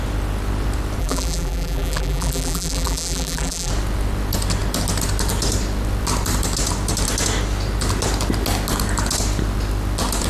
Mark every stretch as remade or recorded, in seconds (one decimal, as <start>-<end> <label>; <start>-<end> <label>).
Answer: 0.0-1.0 recorded; 1.0-3.7 remade; 3.7-10.3 recorded